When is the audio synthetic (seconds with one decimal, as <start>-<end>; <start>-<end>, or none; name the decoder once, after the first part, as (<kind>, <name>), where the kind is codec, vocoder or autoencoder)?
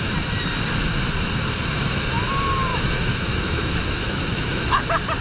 2.7-4.8 (autoencoder, DAC-VAE)